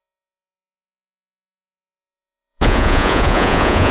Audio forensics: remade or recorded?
remade